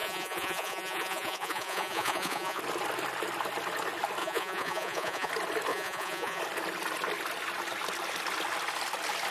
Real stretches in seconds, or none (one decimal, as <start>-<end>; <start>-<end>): 2.6-4.2; 5.3-5.7; 6.4-9.3